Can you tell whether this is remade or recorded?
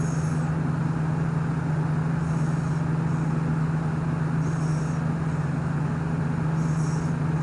recorded